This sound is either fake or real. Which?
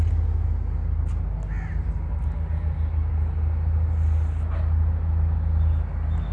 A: real